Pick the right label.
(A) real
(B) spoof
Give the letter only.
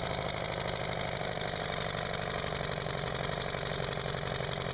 A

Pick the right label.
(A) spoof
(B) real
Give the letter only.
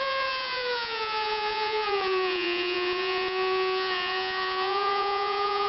A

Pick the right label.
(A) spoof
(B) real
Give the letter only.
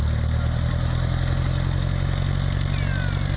B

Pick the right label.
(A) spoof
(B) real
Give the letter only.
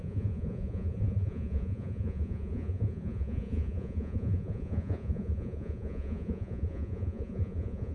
A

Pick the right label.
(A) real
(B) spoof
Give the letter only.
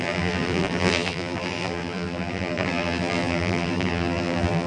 B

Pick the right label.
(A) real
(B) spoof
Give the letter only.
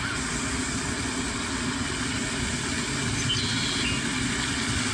A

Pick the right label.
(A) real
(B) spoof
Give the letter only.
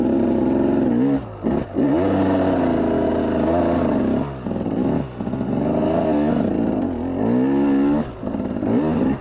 A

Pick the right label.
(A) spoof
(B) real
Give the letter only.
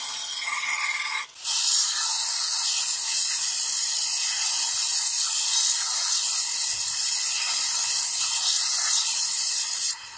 B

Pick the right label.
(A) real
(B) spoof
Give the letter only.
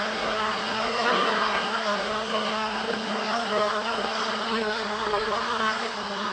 B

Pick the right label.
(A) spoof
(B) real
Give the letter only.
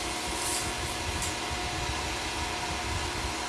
B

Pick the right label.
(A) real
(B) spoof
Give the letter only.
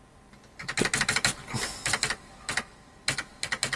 A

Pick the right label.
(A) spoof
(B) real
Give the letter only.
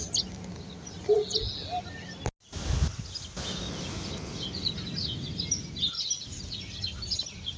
B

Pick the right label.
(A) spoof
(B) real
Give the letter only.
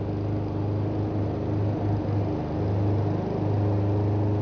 B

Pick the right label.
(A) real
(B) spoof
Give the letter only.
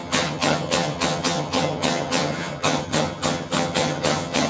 B